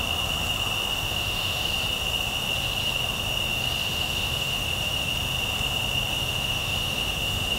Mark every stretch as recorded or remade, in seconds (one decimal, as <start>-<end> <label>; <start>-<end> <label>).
0.0-0.9 recorded; 0.9-1.7 remade; 1.7-3.8 recorded; 3.8-5.1 remade; 5.1-6.1 recorded; 6.1-7.6 remade